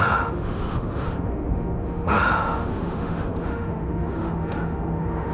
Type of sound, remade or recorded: remade